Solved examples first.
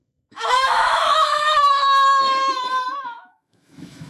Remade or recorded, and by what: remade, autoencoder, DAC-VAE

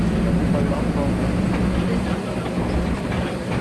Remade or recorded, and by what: recorded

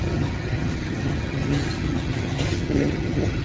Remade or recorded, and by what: remade, vocoder, HiFi-GAN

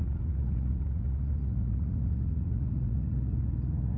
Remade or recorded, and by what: remade, vocoder, Vocos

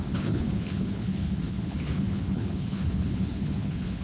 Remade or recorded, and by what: remade, codec, HILCodec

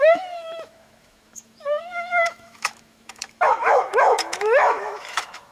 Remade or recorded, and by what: remade, autoencoder, DAC-VAE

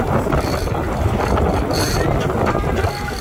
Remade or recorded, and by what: recorded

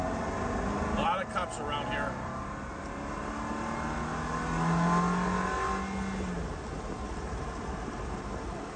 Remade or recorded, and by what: recorded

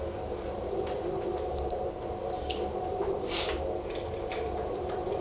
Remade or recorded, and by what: remade, vocoder, BigVGAN v2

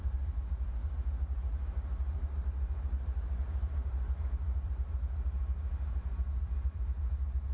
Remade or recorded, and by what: remade, vocoder, BigVGAN v2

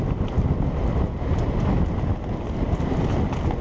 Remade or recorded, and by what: recorded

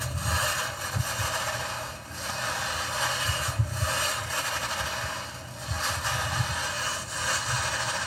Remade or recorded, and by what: recorded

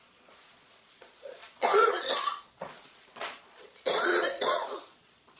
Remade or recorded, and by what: remade, vocoder, Vocos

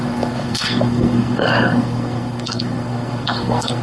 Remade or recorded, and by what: remade, codec, SNAC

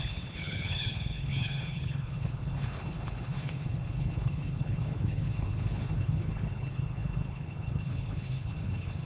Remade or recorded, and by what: remade, codec, HILCodec